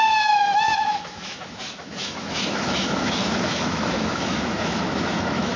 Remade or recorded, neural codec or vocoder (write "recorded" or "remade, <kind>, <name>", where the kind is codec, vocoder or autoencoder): remade, autoencoder, DAC-VAE